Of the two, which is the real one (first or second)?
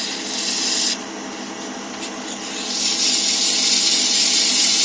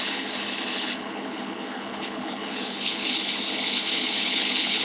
first